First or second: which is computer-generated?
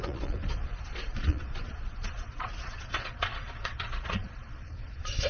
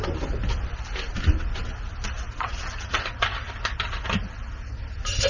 first